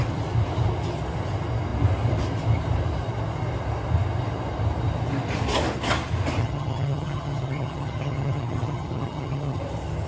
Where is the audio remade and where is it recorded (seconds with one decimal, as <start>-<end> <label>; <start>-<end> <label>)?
0.0-6.4 recorded; 6.4-9.6 remade; 9.6-10.1 recorded

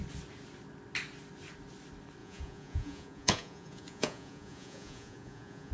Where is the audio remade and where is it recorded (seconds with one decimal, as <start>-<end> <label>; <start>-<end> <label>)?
0.0-2.2 recorded; 2.2-5.7 remade

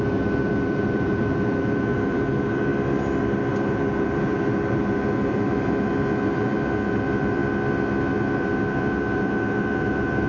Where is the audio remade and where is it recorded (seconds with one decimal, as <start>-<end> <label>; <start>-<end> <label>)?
0.0-2.7 remade; 2.7-3.5 recorded; 3.5-7.4 remade; 7.4-8.0 recorded; 8.0-10.3 remade

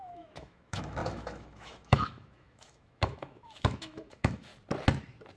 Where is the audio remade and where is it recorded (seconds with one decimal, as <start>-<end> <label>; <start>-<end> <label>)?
0.0-4.5 remade; 4.5-5.4 recorded

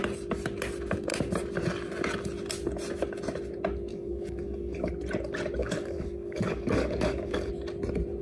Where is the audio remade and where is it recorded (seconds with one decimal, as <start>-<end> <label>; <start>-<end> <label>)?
0.0-3.9 recorded; 3.9-4.9 remade; 4.9-5.6 recorded; 5.6-7.5 remade; 7.5-8.2 recorded

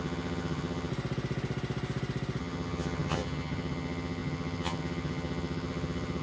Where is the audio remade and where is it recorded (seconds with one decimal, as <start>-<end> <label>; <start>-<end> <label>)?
0.0-0.9 remade; 0.9-2.4 recorded; 2.4-6.2 remade